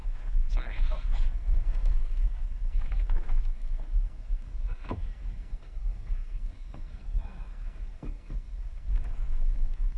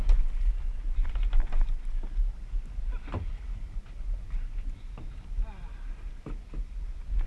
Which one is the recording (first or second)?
second